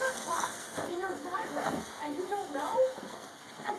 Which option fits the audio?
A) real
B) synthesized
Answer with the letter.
B